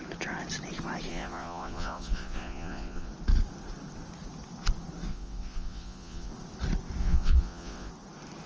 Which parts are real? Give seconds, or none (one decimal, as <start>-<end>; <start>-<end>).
0.0-1.1; 3.1-5.1; 6.3-7.0; 7.9-8.5